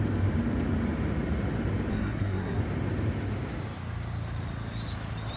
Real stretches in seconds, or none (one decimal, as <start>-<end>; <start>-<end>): 0.0-1.9; 2.6-5.4